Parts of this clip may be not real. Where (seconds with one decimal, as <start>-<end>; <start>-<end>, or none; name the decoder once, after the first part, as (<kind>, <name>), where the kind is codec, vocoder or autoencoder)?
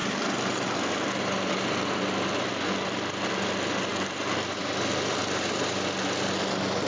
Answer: none